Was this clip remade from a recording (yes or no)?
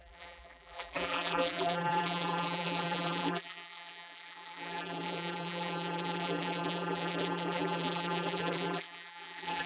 yes